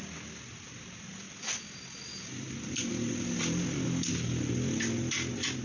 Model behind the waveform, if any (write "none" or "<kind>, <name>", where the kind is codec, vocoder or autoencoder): none